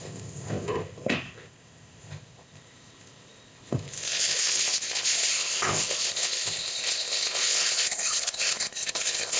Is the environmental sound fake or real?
fake